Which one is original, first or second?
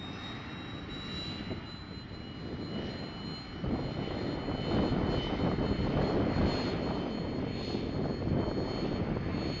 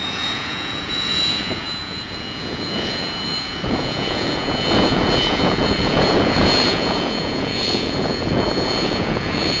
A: first